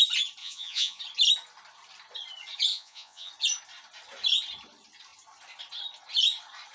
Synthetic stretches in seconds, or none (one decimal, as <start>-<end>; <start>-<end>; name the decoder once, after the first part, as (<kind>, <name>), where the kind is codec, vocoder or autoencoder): 0.4-1.0 (vocoder, Vocos); 2.7-3.3